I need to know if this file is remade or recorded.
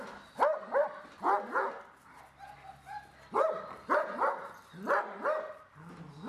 recorded